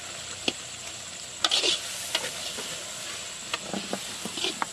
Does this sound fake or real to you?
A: real